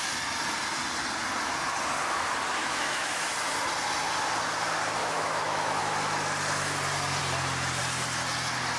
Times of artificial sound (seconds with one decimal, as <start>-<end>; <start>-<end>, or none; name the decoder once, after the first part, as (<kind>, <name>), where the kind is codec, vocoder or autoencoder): 2.6-3.3 (autoencoder, DAC-VAE); 5.0-5.8